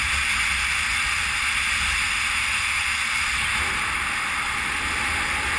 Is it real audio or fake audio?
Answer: real